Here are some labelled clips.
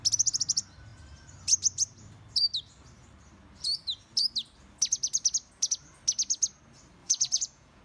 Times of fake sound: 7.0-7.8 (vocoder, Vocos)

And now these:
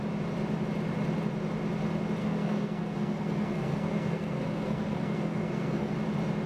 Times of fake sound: 2.2-5.9 (codec, SNAC)

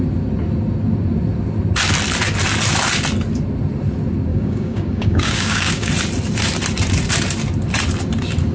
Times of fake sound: 4.3-5.9 (codec, DAC)